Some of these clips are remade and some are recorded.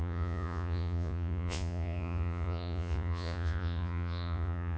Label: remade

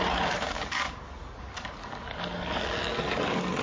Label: remade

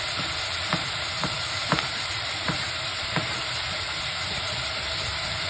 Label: remade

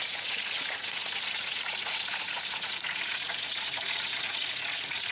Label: remade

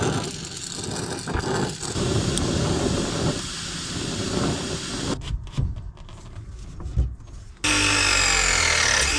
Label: recorded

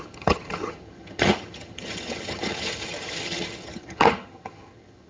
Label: remade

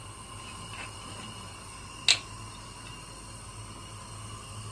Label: recorded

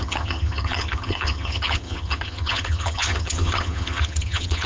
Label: remade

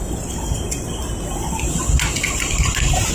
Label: recorded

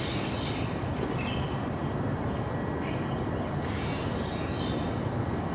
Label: recorded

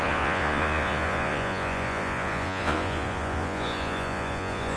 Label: remade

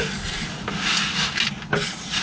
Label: recorded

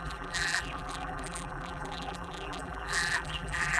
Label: remade